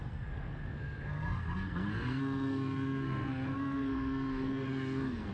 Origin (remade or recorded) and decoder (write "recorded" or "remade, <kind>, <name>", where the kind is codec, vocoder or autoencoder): remade, codec, SNAC